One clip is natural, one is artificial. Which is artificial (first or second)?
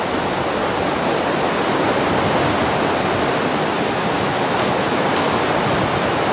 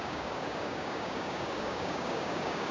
second